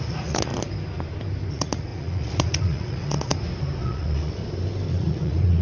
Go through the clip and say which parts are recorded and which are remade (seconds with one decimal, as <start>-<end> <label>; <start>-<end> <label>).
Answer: 0.0-0.5 remade; 0.5-1.5 recorded; 1.5-3.3 remade; 3.3-3.8 recorded; 3.8-4.4 remade; 4.4-4.9 recorded; 4.9-5.6 remade